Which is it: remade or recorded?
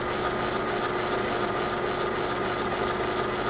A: recorded